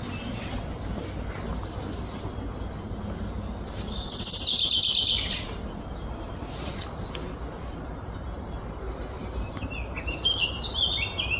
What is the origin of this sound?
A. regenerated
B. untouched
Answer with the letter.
B